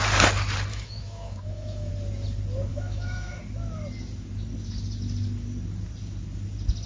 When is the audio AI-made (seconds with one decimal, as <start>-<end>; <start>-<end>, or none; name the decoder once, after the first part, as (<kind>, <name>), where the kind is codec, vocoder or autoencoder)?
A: 0.7-1.9 (autoencoder, DAC-VAE); 2.7-3.4